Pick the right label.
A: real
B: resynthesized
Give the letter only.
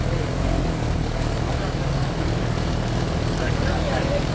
B